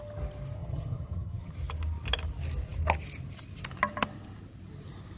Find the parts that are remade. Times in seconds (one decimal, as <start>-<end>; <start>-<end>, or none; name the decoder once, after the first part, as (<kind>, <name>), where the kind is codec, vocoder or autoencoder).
0.6-1.5 (vocoder, HiFi-GAN)